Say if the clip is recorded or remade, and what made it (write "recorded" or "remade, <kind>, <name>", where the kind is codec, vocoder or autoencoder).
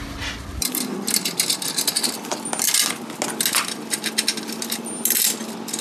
recorded